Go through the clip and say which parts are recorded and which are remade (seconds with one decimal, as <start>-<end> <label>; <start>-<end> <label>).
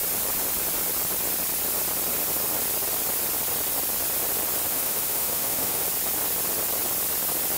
0.0-4.7 recorded; 4.7-5.8 remade; 5.8-7.6 recorded